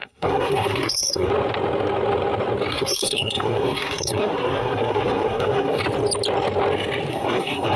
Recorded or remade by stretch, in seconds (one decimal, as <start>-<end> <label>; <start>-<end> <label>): 0.0-1.3 remade; 1.3-2.7 recorded; 2.7-5.8 remade; 5.8-7.1 recorded; 7.1-7.8 remade